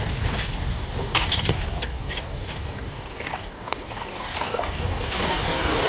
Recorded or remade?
remade